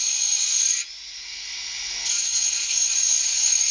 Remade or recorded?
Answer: remade